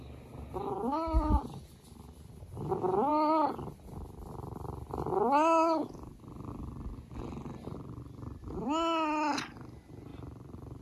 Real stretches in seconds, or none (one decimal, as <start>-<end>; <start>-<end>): 0.0-10.8